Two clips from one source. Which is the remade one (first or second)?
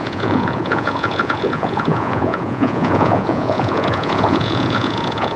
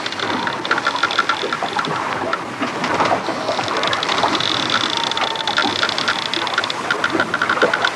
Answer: first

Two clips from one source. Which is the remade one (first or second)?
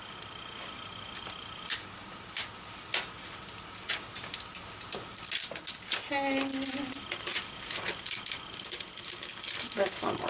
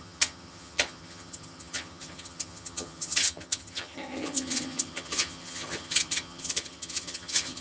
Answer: second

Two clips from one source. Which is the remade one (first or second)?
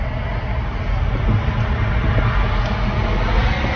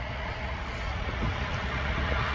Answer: second